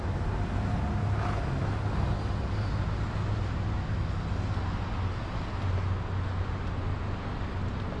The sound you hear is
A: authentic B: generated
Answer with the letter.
A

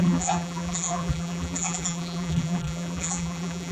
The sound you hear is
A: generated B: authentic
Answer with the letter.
A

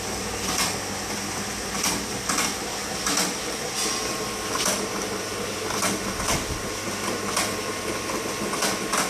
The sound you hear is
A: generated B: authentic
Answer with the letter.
B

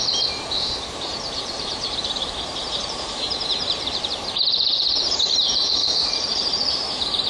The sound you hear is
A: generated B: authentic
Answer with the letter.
A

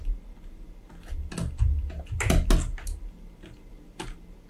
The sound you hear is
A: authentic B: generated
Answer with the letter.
A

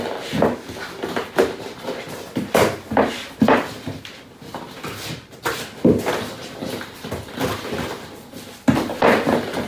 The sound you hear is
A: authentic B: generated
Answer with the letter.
A